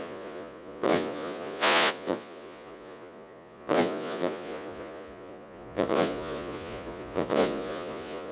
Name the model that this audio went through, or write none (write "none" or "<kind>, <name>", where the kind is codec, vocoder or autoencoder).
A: vocoder, Vocos